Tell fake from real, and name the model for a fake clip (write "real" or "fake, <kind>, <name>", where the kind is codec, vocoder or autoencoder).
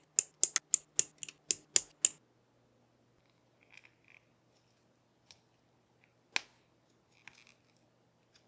real